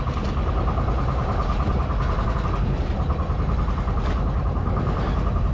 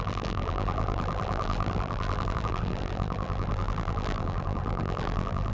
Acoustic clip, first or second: first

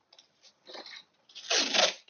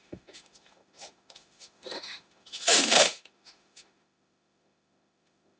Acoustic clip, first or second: first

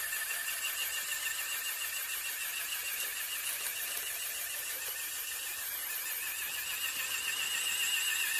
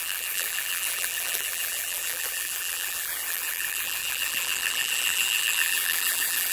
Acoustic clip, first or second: first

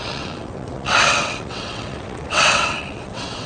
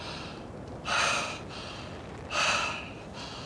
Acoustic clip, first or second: second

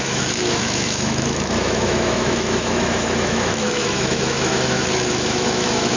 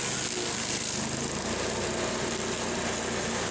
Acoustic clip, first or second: second